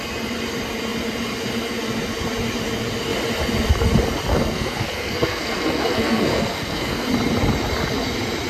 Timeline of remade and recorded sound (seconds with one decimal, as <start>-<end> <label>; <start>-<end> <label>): 0.0-4.3 recorded; 4.3-7.1 remade; 7.1-8.5 recorded